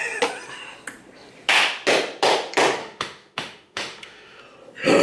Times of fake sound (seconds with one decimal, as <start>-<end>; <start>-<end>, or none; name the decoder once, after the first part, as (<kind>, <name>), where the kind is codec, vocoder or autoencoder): 2.8-4.4 (autoencoder, DAC-VAE)